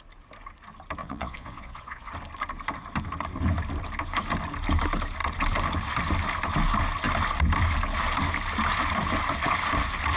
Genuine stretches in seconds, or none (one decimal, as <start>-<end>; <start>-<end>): 0.0-1.0; 2.1-10.2